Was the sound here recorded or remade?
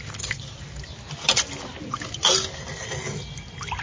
recorded